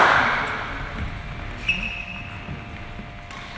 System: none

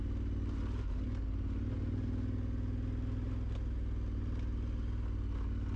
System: none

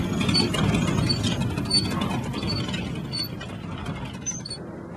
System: none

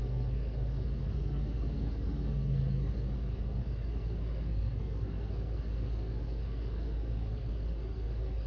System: codec, SNAC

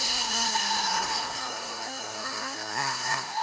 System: codec, SNAC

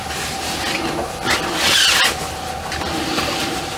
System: none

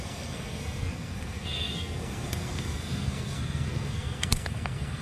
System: codec, SNAC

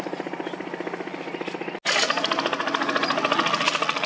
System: none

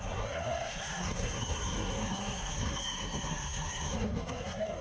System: codec, SNAC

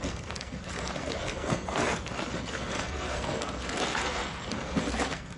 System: codec, SNAC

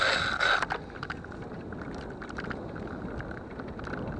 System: none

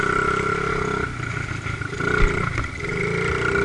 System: none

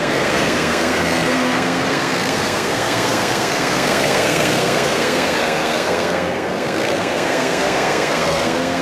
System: codec, SNAC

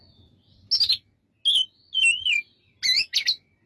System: none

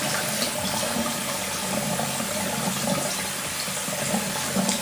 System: none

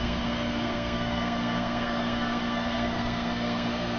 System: codec, SNAC